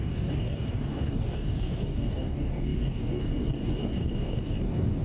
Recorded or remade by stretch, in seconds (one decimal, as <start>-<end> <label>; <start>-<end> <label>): 0.0-5.0 remade

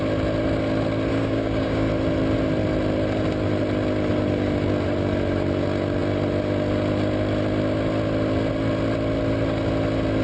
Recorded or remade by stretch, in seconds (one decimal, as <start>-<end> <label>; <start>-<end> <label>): 0.0-1.1 recorded; 1.1-1.9 remade; 1.9-10.2 recorded